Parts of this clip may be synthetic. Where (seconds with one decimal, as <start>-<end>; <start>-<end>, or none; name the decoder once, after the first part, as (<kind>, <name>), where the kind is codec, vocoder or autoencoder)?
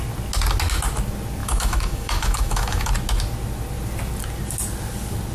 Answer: 1.4-2.9 (autoencoder, DAC-VAE)